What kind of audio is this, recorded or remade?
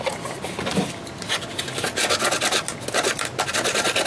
recorded